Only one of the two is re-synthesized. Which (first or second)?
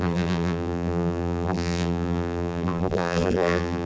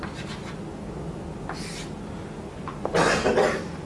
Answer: first